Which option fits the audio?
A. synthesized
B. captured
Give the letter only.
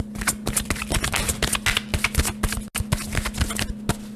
B